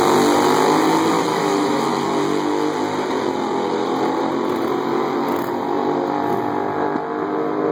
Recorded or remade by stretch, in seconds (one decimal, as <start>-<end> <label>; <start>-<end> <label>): 0.0-1.3 recorded; 1.3-1.8 remade; 1.8-7.7 recorded